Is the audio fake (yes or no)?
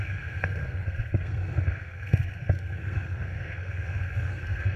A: yes